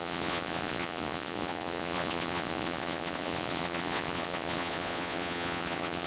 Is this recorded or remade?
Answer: remade